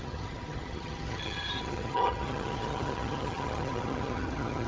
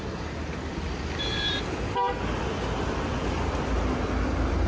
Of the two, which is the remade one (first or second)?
first